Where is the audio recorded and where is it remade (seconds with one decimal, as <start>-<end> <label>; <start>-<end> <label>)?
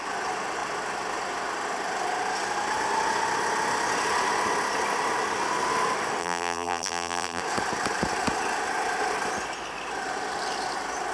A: 0.0-6.2 recorded; 6.2-7.4 remade; 7.4-11.1 recorded